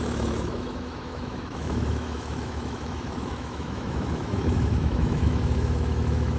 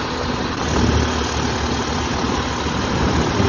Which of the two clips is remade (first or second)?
first